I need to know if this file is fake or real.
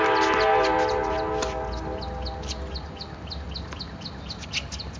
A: real